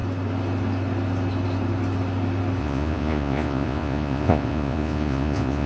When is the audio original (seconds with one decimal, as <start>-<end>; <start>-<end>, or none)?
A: 0.0-2.6

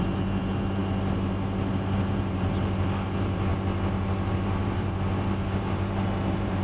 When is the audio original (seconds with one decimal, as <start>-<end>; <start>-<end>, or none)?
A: 0.8-1.7; 3.5-4.3

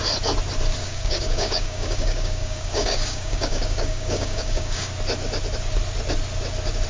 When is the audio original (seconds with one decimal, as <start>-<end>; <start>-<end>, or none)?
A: 0.0-0.8; 4.9-6.9

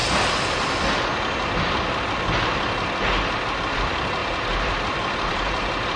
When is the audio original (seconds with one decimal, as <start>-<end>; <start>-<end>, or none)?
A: 0.0-4.2